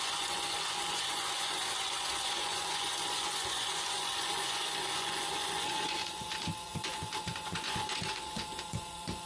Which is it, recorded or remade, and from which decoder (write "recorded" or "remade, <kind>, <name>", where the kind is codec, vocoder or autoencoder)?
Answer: remade, vocoder, Vocos